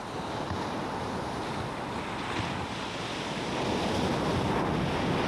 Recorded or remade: recorded